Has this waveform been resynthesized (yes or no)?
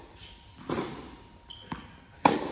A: no